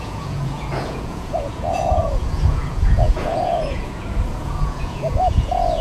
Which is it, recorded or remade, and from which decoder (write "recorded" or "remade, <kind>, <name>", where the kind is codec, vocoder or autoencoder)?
remade, vocoder, Vocos